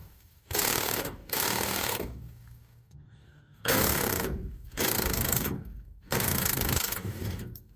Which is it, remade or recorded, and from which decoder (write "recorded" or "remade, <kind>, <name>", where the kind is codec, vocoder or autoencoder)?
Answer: remade, codec, DAC